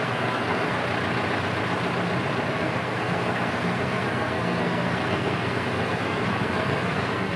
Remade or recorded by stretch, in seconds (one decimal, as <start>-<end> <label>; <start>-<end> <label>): 0.0-0.8 remade; 0.8-2.5 recorded; 2.5-7.4 remade